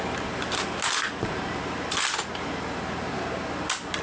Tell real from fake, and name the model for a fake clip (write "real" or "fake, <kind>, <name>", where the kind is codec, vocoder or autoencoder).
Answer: real